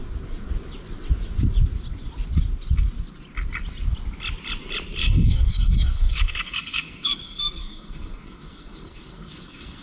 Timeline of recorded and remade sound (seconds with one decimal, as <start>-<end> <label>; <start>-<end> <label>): 0.0-5.0 recorded; 5.0-9.8 remade